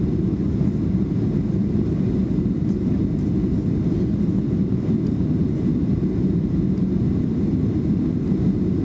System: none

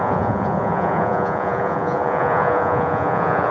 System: vocoder, Vocos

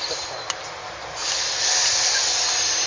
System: none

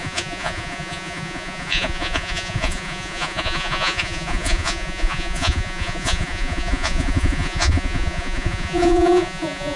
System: vocoder, Vocos